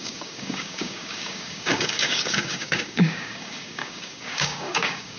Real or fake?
fake